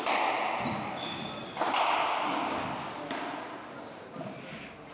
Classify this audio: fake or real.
real